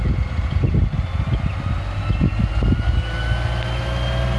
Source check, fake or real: real